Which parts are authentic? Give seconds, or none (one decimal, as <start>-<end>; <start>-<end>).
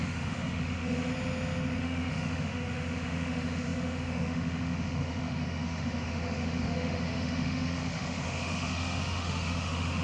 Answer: 1.1-1.8